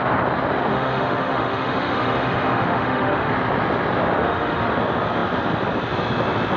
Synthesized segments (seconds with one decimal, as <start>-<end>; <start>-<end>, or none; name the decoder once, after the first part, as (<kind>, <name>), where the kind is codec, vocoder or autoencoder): 0.7-3.3 (autoencoder, DAC-VAE); 4.2-4.7